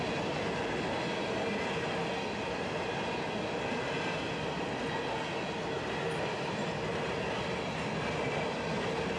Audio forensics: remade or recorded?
recorded